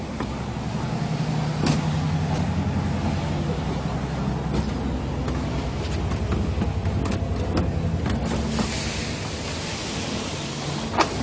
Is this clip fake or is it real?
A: real